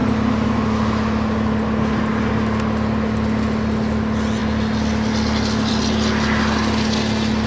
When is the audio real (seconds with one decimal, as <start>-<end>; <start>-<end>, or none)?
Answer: 0.0-7.5